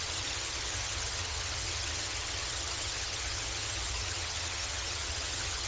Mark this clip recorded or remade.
remade